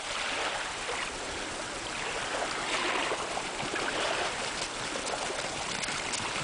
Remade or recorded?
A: recorded